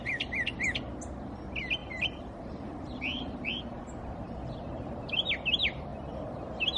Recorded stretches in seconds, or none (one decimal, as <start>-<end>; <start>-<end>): 0.0-1.8; 3.5-6.8